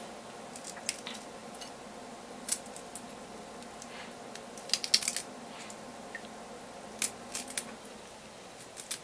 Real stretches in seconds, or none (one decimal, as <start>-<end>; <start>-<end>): 0.0-9.0